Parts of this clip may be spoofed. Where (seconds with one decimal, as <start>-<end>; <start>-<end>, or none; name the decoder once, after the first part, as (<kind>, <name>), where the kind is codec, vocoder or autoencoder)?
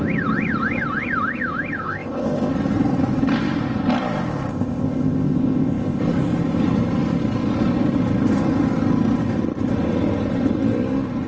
1.8-2.5 (codec, ZipCodec); 4.5-6.0